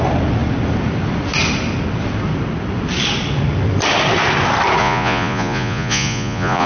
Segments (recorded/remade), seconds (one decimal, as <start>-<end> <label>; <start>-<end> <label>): 0.0-4.8 recorded; 4.8-6.7 remade

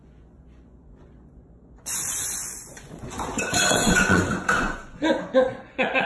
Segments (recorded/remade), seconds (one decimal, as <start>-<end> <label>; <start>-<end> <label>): 0.0-6.1 remade

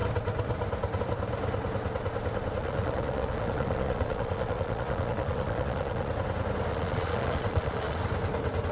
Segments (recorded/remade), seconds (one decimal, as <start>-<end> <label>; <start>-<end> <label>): 0.0-2.6 recorded; 2.6-6.1 remade; 6.1-6.7 recorded; 6.7-8.0 remade; 8.0-8.7 recorded

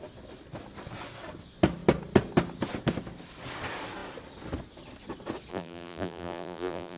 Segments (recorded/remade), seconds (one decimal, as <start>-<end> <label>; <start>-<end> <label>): 0.0-5.5 recorded; 5.5-7.0 remade

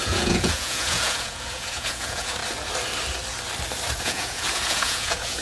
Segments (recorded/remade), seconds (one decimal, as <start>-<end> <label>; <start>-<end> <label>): 0.0-2.4 remade; 2.4-4.0 recorded; 4.0-5.4 remade

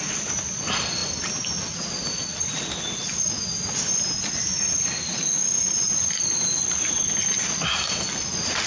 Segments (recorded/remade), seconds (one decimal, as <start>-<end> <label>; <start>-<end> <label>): 0.0-8.7 recorded

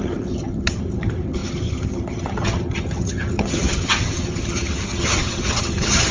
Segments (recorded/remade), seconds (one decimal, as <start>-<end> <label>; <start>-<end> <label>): 0.0-6.1 remade